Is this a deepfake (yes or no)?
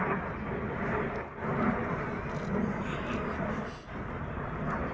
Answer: no